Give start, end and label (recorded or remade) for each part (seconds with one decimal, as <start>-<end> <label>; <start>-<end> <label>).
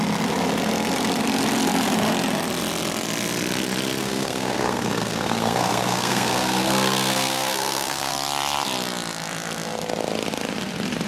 0.0-4.0 recorded; 4.0-8.1 remade; 8.1-11.1 recorded